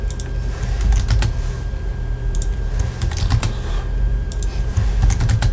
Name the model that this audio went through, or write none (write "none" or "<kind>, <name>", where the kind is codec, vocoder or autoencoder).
none